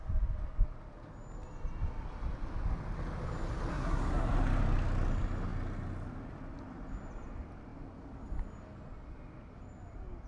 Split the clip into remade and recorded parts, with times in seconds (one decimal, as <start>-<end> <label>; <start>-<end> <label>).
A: 0.0-3.7 recorded; 3.7-4.3 remade; 4.3-10.3 recorded